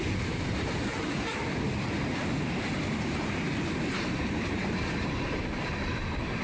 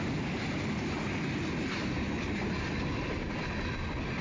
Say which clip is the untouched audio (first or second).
second